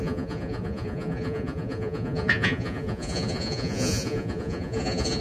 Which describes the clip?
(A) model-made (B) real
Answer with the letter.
A